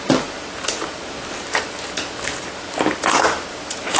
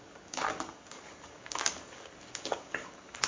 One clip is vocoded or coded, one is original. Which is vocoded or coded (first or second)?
second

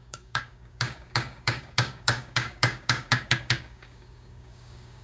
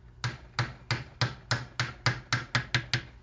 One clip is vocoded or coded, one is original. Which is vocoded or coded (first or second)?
first